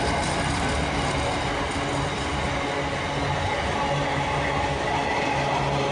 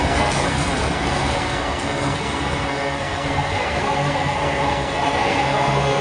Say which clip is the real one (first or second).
first